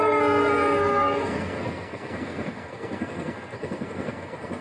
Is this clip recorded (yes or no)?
no